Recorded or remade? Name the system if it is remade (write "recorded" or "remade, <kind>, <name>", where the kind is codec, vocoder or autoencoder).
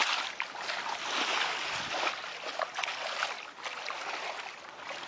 recorded